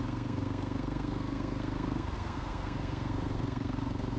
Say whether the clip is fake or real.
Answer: fake